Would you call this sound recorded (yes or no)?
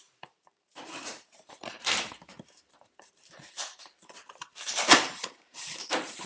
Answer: no